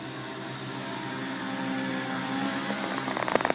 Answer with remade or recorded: recorded